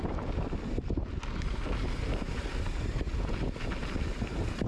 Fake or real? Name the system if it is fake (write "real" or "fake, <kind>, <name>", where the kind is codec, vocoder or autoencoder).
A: real